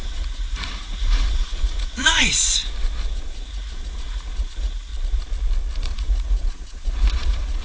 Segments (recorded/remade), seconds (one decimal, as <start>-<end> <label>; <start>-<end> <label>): 0.0-2.6 remade; 2.6-3.1 recorded; 3.1-4.9 remade; 4.9-5.8 recorded; 5.8-7.6 remade